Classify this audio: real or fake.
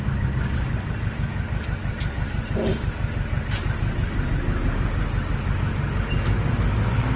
real